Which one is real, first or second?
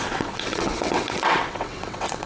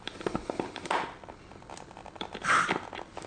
second